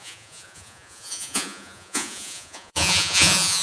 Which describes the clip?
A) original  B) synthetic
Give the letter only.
B